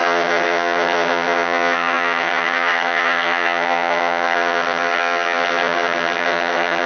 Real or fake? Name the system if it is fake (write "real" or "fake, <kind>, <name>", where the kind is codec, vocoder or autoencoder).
fake, vocoder, HiFi-GAN